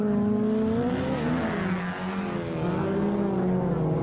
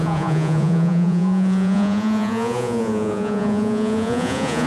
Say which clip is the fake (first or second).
second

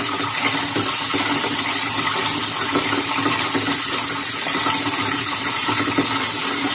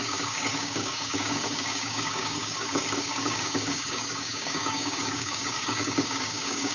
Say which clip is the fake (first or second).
second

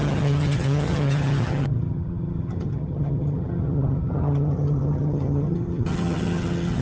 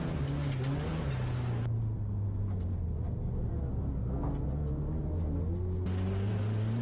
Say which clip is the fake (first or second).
first